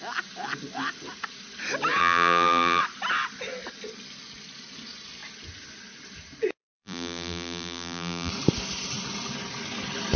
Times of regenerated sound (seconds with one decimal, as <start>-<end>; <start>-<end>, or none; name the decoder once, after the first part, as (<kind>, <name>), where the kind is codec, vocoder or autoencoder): 2.0-2.8 (vocoder, BigVGAN v2); 6.6-8.3